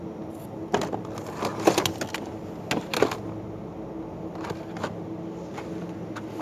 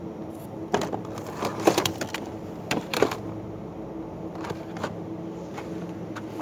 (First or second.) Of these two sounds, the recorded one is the first